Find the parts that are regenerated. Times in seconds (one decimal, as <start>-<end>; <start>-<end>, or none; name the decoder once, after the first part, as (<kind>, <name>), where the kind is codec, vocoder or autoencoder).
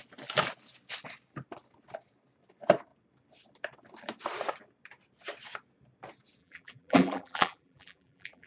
6.4-8.5 (vocoder, BigVGAN v2)